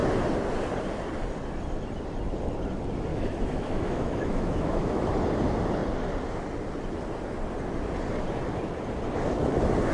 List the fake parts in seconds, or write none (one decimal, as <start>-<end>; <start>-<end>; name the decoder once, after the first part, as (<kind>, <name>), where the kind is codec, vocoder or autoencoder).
3.1-5.1 (autoencoder, DAC-VAE)